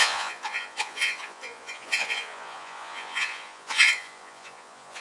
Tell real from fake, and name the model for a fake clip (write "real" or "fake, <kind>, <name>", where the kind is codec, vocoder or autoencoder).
fake, vocoder, Vocos